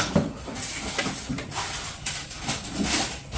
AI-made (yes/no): no